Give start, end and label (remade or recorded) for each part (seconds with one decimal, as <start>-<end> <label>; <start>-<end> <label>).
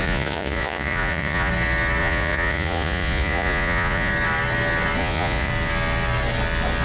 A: 0.0-1.5 remade; 1.5-2.0 recorded; 2.0-4.1 remade; 4.1-5.0 recorded; 5.0-5.5 remade; 5.5-6.8 recorded